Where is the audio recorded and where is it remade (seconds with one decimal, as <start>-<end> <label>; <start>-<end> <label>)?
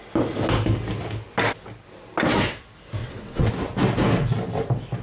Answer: 0.0-3.0 recorded; 3.0-3.5 remade; 3.5-5.0 recorded